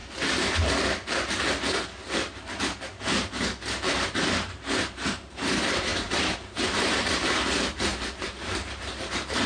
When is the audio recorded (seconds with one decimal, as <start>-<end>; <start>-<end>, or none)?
0.0-3.9; 5.9-6.5